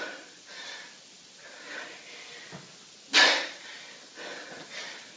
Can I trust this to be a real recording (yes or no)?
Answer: yes